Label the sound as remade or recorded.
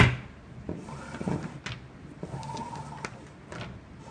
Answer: recorded